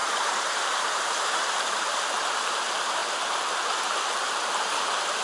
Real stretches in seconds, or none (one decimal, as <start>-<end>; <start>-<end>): 1.8-5.2

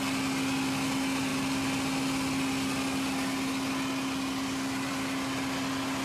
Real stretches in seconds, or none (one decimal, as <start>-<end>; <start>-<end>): 0.0-6.0

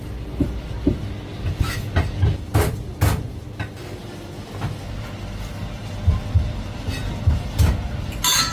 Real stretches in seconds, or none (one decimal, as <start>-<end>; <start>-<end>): 0.0-8.5

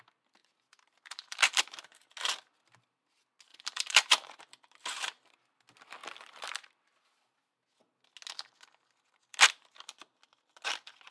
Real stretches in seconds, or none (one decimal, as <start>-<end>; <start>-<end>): 0.0-0.4; 1.6-3.5; 4.6-6.0; 6.7-9.3; 9.9-11.1

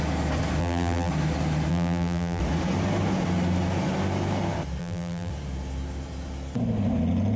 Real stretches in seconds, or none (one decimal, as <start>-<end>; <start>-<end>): 0.0-0.6; 1.1-1.7; 2.4-4.8; 5.3-7.4

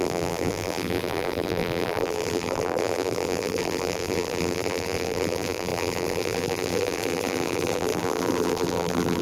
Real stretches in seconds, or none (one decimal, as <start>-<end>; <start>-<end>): none

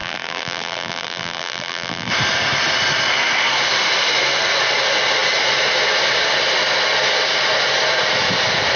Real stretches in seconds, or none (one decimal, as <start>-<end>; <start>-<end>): 2.1-8.8

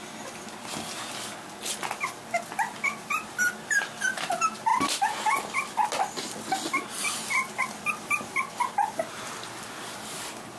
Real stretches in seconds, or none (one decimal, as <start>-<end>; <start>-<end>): 0.0-10.6